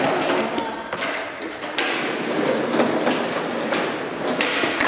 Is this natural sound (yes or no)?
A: yes